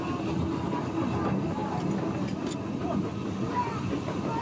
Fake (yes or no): no